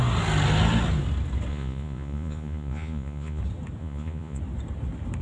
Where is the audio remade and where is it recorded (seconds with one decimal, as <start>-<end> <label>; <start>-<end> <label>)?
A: 0.0-1.5 recorded; 1.5-3.4 remade; 3.4-3.8 recorded; 3.8-4.4 remade; 4.4-5.2 recorded